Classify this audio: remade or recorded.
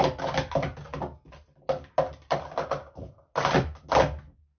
recorded